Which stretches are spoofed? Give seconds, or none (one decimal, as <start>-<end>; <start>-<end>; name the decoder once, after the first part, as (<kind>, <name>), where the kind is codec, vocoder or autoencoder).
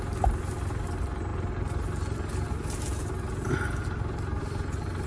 none